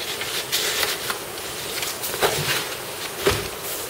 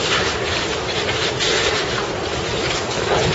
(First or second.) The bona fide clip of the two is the first